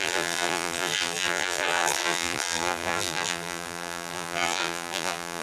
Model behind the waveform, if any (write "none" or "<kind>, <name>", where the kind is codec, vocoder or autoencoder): vocoder, BigVGAN v2